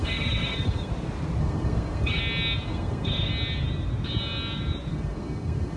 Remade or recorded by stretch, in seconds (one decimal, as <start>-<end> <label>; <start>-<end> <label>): 0.0-0.9 remade; 0.9-1.4 recorded; 1.4-2.2 remade; 2.2-2.7 recorded; 2.7-3.3 remade; 3.3-4.9 recorded; 4.9-5.8 remade